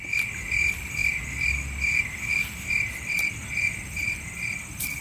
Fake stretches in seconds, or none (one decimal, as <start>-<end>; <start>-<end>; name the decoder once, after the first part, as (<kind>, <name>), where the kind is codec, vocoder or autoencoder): none